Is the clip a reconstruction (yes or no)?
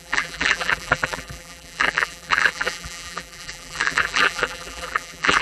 yes